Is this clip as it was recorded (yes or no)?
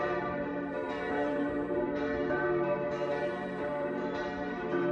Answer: no